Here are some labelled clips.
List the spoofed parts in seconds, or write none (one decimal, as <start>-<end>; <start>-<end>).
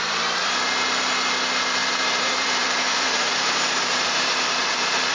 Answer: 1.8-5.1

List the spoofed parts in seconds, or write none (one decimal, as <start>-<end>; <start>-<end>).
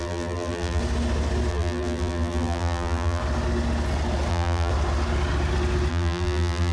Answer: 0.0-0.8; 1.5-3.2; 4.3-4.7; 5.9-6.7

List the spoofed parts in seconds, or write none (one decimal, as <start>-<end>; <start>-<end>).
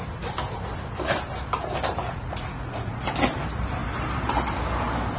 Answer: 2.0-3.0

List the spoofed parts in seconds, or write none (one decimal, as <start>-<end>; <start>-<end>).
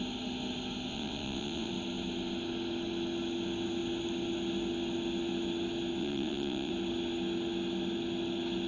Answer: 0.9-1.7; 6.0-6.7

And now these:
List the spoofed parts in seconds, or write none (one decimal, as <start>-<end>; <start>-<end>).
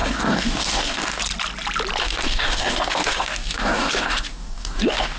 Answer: 0.0-1.2; 2.0-5.2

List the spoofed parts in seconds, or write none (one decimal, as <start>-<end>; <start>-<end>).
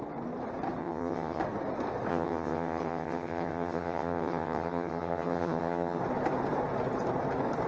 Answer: 0.8-1.4; 2.1-6.0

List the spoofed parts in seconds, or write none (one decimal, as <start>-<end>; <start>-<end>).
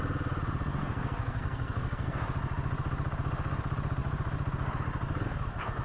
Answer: 0.8-2.2